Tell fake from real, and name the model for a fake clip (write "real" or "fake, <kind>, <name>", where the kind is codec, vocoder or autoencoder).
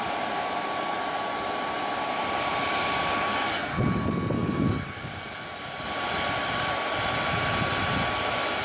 real